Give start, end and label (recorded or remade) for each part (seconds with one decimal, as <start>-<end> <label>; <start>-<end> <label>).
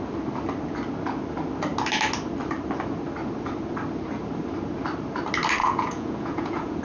0.0-5.6 recorded; 5.6-6.8 remade